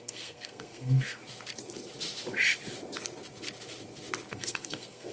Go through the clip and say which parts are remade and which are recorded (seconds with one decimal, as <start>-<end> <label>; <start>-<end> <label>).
0.0-1.2 remade; 1.2-4.3 recorded; 4.3-5.1 remade

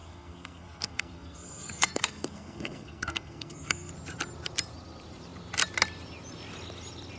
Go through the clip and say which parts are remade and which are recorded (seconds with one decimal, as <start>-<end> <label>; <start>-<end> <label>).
0.0-3.9 remade; 3.9-7.2 recorded

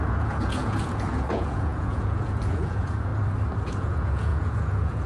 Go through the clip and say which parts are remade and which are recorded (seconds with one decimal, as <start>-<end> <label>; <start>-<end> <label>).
0.0-3.1 remade; 3.1-3.7 recorded; 3.7-5.1 remade

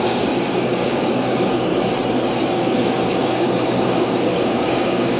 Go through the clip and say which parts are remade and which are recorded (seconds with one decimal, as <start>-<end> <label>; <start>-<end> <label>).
0.0-1.7 remade; 1.7-2.3 recorded; 2.3-5.2 remade

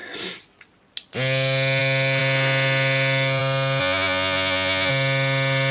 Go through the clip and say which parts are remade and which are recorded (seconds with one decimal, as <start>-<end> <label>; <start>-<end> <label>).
0.0-3.8 recorded; 3.8-4.9 remade; 4.9-5.7 recorded

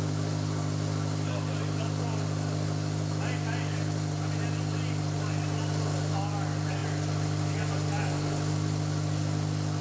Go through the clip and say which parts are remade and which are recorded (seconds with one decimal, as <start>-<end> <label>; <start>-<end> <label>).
0.0-9.8 recorded

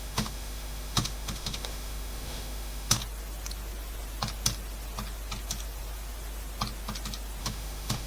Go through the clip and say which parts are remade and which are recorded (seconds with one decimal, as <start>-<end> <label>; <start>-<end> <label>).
0.0-3.0 remade; 3.0-7.4 recorded; 7.4-8.1 remade

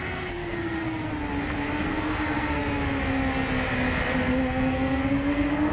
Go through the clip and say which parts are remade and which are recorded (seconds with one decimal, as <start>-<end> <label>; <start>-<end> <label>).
0.0-1.1 remade; 1.1-1.8 recorded; 1.8-2.6 remade; 2.6-4.5 recorded; 4.5-5.7 remade